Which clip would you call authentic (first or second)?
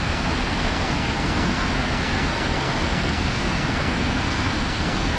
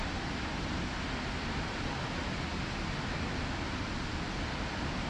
second